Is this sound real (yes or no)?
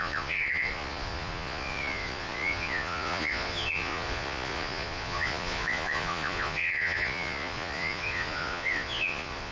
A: no